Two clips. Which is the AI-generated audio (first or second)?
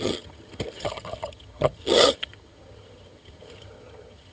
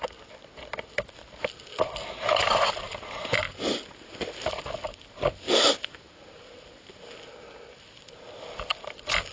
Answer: first